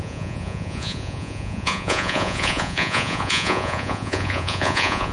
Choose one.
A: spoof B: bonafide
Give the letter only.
A